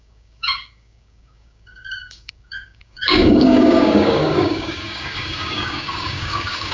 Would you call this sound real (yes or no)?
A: no